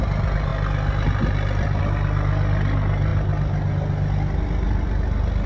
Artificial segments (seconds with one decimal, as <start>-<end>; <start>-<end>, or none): none